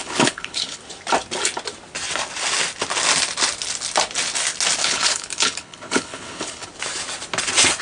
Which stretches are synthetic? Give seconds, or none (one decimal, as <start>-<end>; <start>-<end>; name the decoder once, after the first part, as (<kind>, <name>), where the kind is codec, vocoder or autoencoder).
0.0-0.8 (codec, HILCodec); 4.8-6.7